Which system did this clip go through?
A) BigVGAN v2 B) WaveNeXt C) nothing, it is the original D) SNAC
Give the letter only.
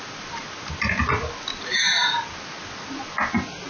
C